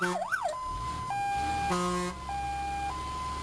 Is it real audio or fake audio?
real